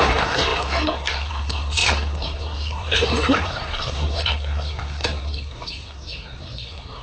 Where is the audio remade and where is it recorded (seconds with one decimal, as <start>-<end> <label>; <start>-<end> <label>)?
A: 0.0-7.0 remade